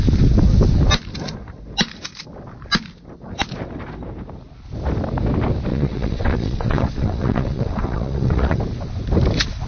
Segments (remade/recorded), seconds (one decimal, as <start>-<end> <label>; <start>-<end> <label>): 0.0-5.7 recorded; 5.7-8.6 remade; 8.6-9.7 recorded